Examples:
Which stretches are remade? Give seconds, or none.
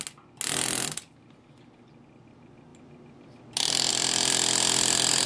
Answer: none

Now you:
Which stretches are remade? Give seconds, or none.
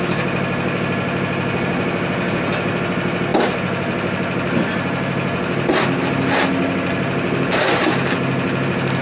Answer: none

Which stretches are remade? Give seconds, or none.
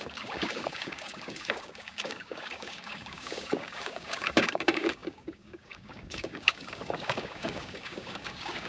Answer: 0.0-8.7 (codec, DAC)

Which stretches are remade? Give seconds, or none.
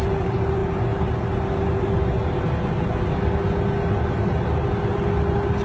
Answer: none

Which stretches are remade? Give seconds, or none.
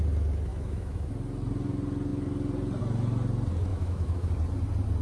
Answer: 0.5-1.1 (autoencoder, DAC-VAE); 3.7-4.3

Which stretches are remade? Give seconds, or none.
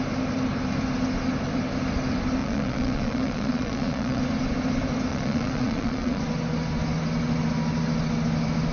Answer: 2.4-4.2 (vocoder, Vocos); 5.1-6.2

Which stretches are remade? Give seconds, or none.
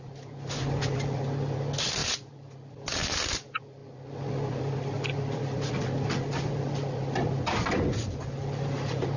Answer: none